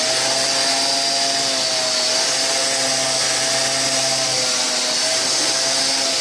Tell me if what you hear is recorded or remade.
recorded